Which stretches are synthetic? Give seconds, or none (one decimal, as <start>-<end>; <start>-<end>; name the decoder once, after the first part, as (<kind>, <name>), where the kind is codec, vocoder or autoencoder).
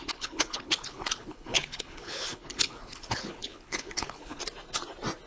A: 0.0-4.4 (codec, HILCodec)